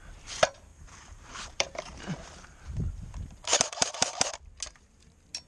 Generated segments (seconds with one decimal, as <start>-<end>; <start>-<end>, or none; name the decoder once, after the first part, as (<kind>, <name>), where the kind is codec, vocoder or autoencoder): 0.7-2.6 (vocoder, BigVGAN v2); 3.5-4.2